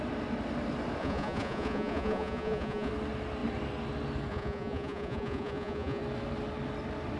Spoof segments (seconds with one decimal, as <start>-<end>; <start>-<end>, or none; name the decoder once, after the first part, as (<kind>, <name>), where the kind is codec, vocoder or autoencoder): 1.0-2.9 (vocoder, Vocos); 4.3-6.0